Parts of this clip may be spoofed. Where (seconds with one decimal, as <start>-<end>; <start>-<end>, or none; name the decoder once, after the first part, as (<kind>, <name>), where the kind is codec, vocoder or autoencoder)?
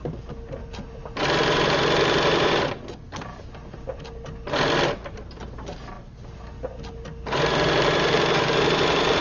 none